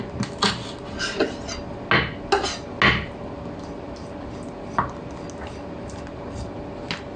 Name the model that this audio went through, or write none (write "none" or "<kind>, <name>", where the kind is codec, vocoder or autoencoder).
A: none